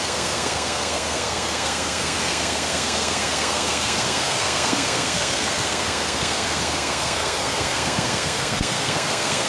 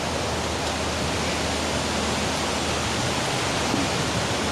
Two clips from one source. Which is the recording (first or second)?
second